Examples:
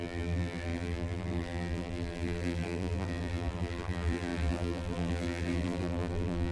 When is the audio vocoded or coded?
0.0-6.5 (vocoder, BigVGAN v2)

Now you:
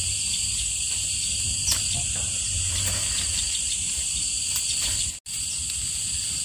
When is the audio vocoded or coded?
0.0-3.8 (vocoder, BigVGAN v2)

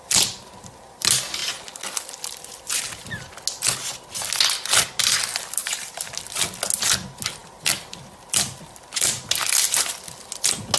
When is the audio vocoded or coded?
5.6-6.1 (vocoder, BigVGAN v2)

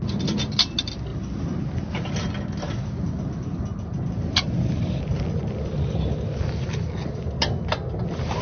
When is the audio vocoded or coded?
none

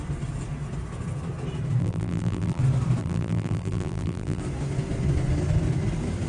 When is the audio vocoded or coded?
1.8-2.6 (vocoder, BigVGAN v2); 3.0-4.4

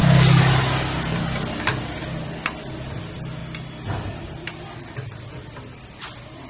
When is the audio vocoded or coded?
0.0-3.4 (vocoder, BigVGAN v2); 4.8-6.5

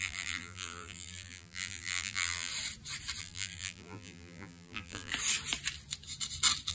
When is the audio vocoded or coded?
0.0-2.5 (vocoder, BigVGAN v2); 3.2-5.1

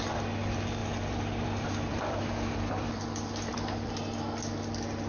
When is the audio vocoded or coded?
0.8-3.9 (vocoder, BigVGAN v2)